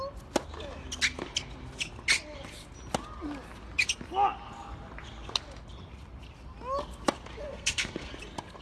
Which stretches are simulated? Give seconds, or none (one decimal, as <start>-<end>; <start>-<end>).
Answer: 7.5-8.1